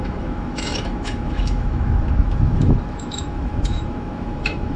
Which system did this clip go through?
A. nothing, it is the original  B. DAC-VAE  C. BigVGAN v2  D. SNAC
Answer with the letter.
B